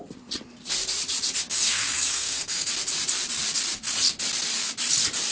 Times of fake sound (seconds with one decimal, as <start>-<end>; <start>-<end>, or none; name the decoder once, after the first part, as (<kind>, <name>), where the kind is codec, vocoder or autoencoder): 1.4-2.7 (codec, SNAC)